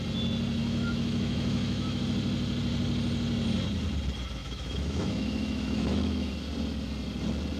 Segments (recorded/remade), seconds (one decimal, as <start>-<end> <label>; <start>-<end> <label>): 0.0-0.6 recorded; 0.6-2.0 remade; 2.0-4.4 recorded; 4.4-6.3 remade; 6.3-7.6 recorded